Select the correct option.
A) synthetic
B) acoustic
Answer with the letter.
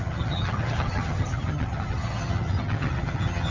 A